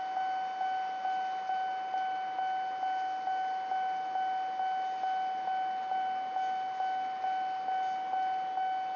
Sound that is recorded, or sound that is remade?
recorded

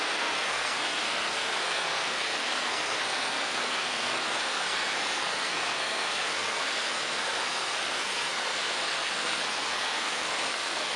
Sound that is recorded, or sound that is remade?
remade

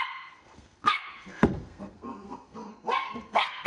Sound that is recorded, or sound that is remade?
remade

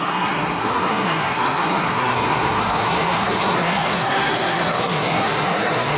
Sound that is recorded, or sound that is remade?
remade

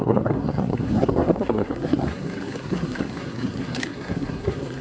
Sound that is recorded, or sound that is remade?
remade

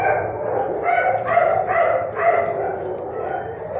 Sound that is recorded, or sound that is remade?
recorded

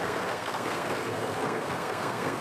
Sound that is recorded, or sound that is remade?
remade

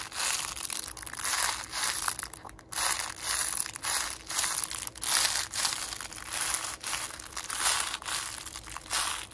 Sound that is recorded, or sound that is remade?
recorded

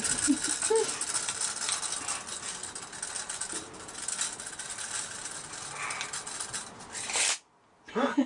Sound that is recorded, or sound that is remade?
recorded